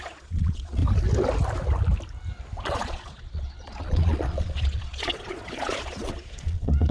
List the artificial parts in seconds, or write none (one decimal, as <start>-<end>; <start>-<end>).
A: 0.0-0.8; 2.6-6.9